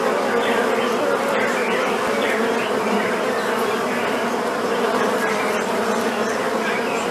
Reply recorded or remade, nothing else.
recorded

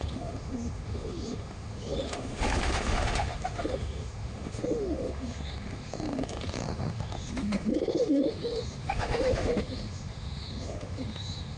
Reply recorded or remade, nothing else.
remade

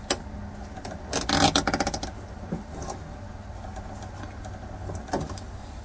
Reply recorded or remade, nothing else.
recorded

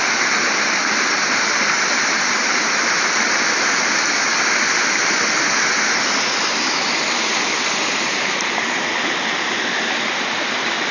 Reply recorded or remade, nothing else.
recorded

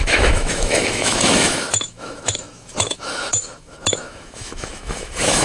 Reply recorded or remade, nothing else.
remade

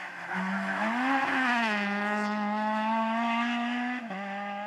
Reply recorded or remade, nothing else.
remade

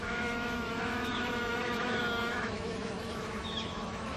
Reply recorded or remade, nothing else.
remade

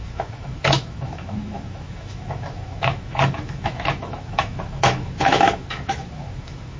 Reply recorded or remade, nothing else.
remade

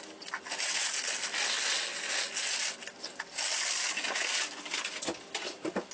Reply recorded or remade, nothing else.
recorded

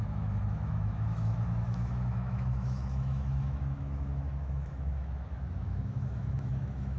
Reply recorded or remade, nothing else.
remade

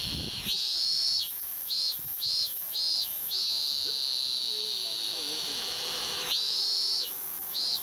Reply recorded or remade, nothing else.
remade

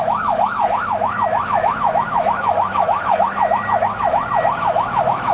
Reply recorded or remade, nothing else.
remade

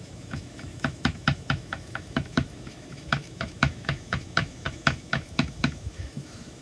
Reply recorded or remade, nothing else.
remade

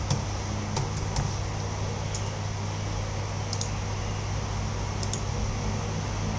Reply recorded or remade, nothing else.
recorded